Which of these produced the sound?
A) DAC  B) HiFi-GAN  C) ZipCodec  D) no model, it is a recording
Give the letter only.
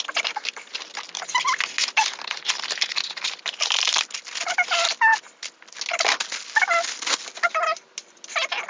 D